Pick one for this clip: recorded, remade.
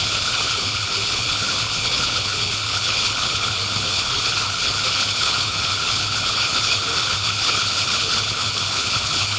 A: remade